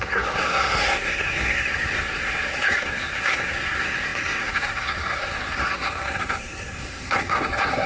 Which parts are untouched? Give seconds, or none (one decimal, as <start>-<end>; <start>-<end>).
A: none